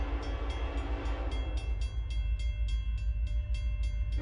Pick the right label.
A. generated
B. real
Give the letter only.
B